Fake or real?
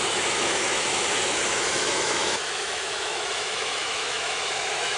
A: fake